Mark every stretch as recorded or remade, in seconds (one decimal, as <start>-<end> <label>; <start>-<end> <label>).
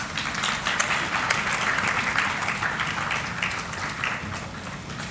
0.0-5.1 recorded